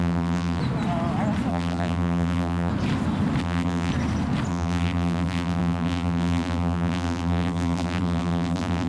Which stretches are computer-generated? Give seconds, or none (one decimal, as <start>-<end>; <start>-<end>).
0.0-0.6; 1.5-2.7; 3.4-3.9; 4.5-8.9